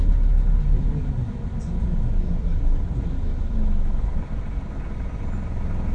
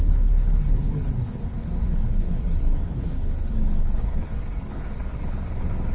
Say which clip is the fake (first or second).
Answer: second